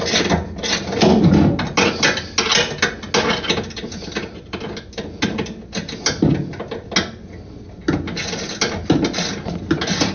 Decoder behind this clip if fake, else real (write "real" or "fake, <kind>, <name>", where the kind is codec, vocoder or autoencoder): real